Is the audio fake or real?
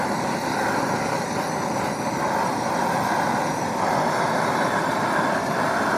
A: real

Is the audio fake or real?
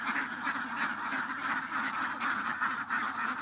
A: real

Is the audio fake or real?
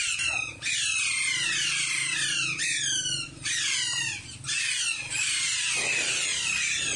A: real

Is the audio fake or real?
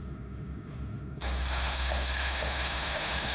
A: fake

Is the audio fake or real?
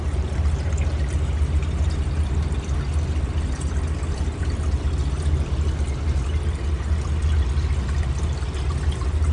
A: real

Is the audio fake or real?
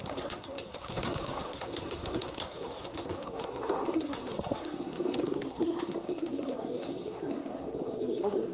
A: fake